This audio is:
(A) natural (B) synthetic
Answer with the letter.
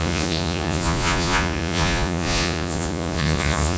B